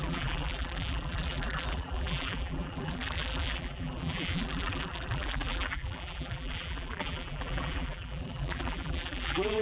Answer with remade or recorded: remade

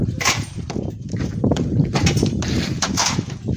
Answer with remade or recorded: remade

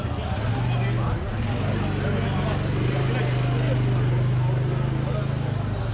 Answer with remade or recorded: recorded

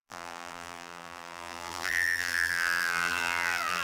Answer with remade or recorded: remade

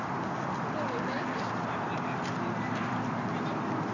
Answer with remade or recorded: remade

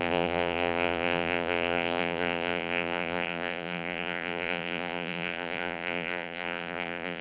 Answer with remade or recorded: remade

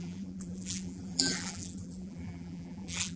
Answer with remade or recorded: remade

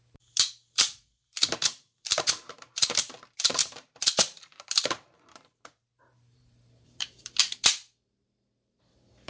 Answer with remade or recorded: remade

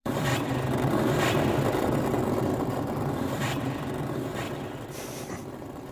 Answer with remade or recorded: remade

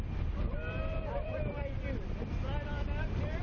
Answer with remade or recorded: remade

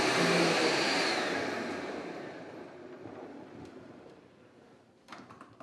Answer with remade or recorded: remade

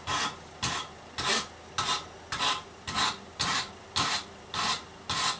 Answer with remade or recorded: recorded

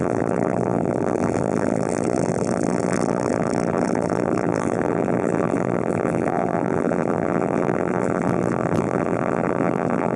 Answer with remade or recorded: remade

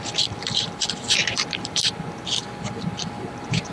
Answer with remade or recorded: remade